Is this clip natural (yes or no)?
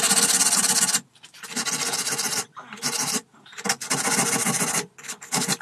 yes